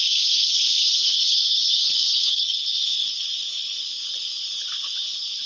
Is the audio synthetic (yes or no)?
yes